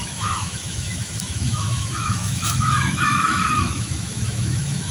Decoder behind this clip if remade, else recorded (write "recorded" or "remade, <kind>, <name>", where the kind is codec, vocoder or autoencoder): remade, autoencoder, DAC-VAE